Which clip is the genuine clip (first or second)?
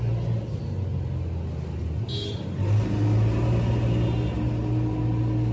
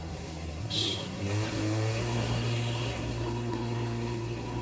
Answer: first